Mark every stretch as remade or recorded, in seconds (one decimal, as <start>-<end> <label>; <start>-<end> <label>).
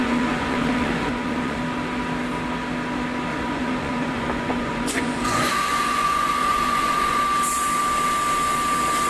0.0-1.6 remade; 1.6-3.3 recorded; 3.3-7.2 remade; 7.2-9.1 recorded